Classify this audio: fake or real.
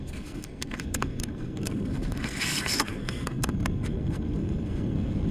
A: fake